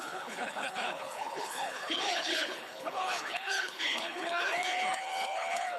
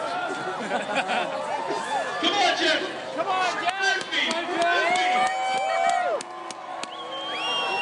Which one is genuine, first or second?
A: second